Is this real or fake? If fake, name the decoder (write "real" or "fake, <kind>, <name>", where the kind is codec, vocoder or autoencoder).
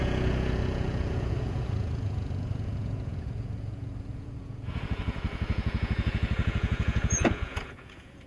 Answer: fake, vocoder, Vocos